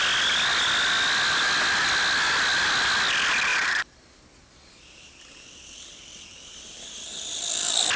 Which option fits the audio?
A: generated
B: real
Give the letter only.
B